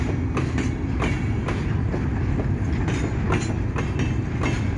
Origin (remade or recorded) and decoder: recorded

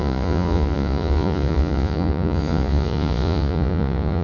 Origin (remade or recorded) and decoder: remade, vocoder, Vocos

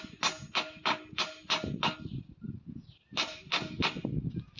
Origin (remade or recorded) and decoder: recorded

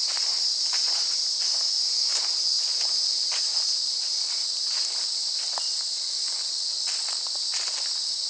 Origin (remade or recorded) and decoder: recorded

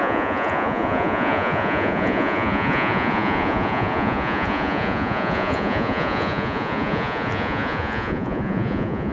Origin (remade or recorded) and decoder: remade, vocoder, Vocos